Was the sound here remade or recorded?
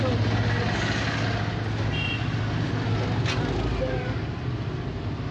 recorded